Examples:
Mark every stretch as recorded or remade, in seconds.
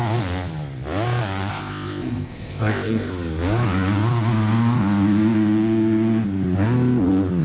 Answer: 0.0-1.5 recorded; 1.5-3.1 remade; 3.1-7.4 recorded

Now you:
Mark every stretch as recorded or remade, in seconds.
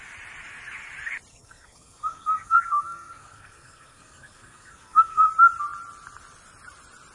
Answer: 0.0-1.3 recorded; 1.3-5.3 remade; 5.3-7.1 recorded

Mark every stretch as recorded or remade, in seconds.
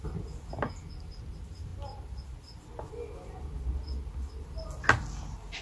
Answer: 0.0-5.6 recorded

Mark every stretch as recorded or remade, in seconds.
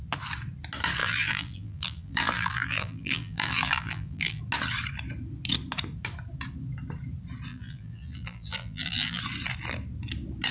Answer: 0.0-1.0 recorded; 1.0-4.4 remade; 4.4-7.5 recorded; 7.5-9.2 remade; 9.2-10.5 recorded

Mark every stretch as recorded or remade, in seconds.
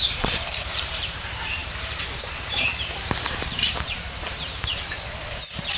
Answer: 0.0-4.7 remade; 4.7-5.8 recorded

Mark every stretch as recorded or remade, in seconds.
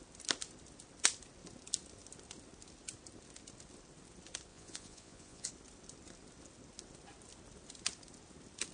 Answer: 0.0-4.5 recorded; 4.5-5.5 remade; 5.5-8.7 recorded